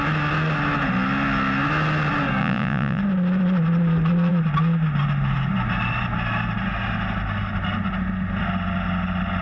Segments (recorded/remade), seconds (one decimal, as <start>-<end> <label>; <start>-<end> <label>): 0.0-2.4 recorded; 2.4-3.0 remade; 3.0-9.4 recorded